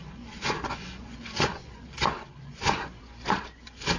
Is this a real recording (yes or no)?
no